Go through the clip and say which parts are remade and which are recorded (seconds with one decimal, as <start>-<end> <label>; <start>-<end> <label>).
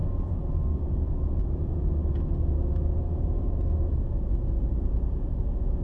0.0-5.8 remade